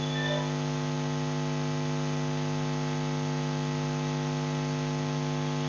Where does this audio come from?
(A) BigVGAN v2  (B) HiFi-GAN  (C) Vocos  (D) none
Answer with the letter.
D